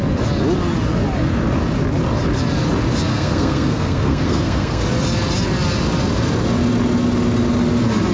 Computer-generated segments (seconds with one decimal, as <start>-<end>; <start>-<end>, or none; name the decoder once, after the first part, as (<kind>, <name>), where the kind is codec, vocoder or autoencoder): 3.1-4.8 (codec, SNAC)